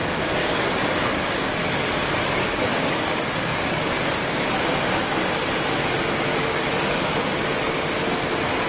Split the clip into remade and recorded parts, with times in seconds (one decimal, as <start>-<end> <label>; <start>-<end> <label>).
0.0-0.4 recorded; 0.4-1.2 remade; 1.2-1.6 recorded; 1.6-3.8 remade; 3.8-6.3 recorded; 6.3-7.0 remade; 7.0-8.7 recorded